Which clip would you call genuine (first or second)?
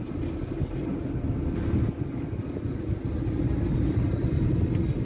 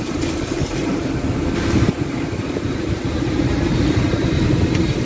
first